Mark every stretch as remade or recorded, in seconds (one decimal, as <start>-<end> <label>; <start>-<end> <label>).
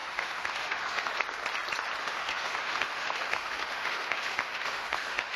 0.0-1.1 remade; 1.1-2.0 recorded; 2.0-5.4 remade